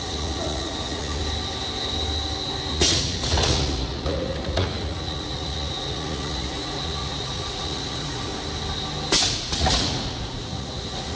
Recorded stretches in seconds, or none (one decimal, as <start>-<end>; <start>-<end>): 1.2-2.7; 8.3-9.4

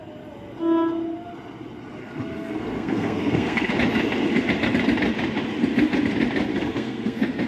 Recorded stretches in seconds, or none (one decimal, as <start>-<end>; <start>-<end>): 0.0-2.0; 3.7-6.5

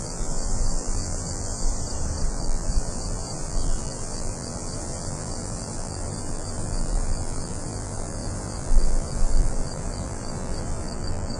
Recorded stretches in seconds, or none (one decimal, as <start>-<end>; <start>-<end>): 1.7-2.3

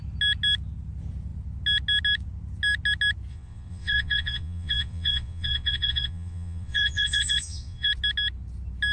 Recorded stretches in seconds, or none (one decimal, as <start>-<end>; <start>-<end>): 0.0-3.3; 7.9-8.9

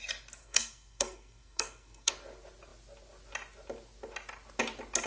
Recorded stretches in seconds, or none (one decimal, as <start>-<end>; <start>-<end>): 0.0-0.4; 2.1-5.1